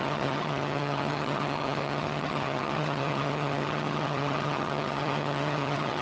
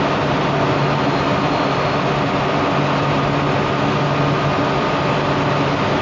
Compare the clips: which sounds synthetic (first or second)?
first